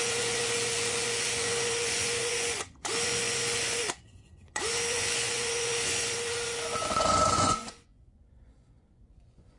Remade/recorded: remade